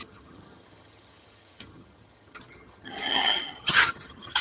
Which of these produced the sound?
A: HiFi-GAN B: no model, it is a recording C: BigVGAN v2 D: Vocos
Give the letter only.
A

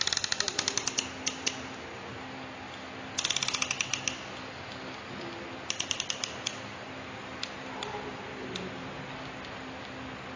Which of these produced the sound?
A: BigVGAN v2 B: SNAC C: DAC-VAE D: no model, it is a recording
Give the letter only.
D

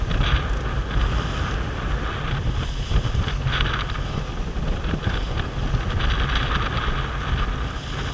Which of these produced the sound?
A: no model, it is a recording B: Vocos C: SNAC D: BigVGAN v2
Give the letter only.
A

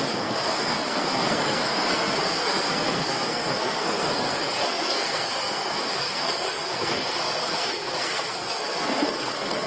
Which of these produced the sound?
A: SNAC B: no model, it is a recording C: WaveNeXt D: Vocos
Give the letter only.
A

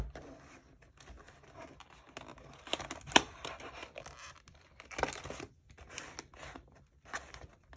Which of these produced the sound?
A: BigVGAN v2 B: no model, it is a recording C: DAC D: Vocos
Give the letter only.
B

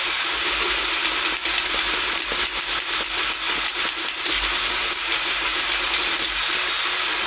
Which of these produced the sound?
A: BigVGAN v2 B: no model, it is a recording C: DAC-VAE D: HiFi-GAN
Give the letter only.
B